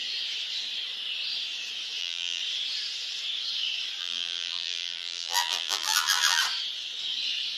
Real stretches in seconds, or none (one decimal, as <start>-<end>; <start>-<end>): 0.0-2.0; 2.4-4.0; 6.4-7.6